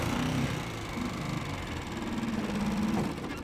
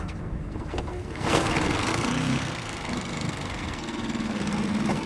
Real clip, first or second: first